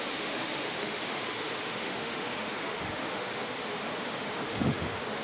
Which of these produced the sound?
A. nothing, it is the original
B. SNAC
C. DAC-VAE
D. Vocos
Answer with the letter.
C